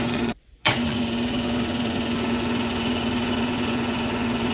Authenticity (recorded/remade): remade